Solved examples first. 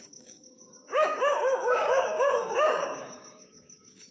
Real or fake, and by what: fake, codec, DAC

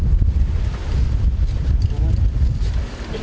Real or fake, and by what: real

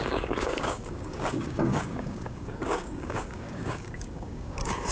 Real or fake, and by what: fake, codec, DAC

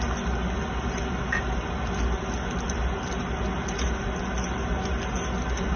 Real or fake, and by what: real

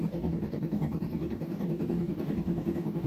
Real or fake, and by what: fake, codec, DAC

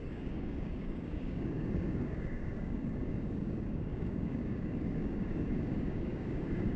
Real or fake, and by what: fake, codec, DAC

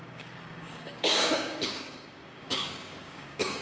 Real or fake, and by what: fake, codec, DAC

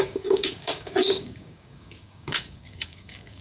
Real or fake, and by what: fake, codec, DAC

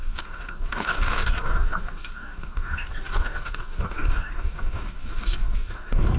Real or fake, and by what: fake, codec, DAC